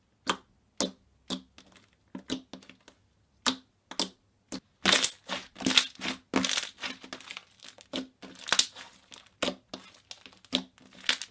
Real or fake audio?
real